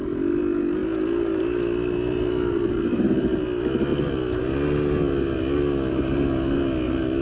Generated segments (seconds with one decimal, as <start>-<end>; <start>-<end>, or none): none